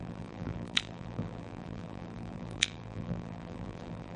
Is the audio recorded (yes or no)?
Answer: no